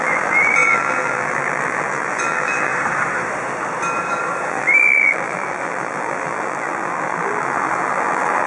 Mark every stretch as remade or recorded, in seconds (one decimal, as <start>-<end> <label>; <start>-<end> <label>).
0.0-2.7 remade; 2.7-4.5 recorded; 4.5-8.5 remade